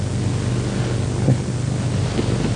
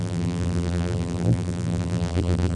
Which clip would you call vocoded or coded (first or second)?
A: second